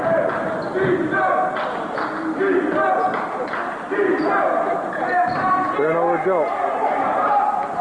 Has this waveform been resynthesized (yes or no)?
no